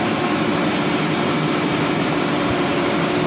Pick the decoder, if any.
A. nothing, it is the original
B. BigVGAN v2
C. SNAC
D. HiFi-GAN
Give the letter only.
B